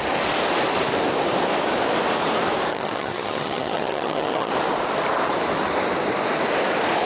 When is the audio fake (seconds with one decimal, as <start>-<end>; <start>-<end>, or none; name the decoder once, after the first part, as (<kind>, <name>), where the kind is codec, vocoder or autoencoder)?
2.7-4.5 (vocoder, HiFi-GAN)